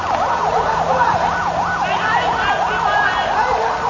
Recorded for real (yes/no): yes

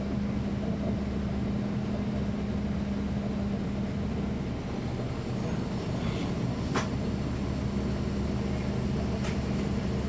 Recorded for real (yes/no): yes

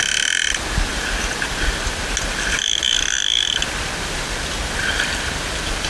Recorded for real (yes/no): yes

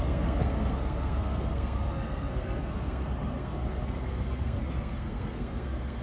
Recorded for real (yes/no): no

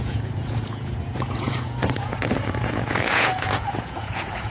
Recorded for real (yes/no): no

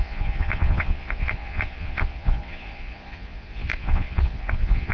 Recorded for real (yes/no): no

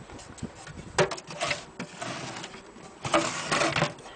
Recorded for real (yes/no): yes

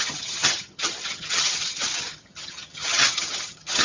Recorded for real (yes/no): no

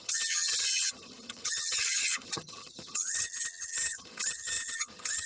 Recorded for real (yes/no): no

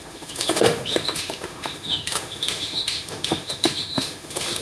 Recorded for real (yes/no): no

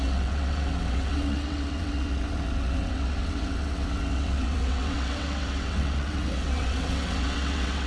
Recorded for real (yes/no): no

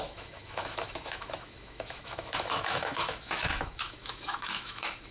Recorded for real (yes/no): no